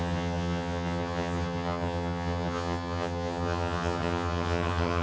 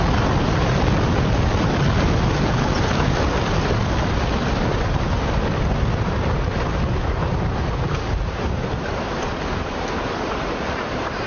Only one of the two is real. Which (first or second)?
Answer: second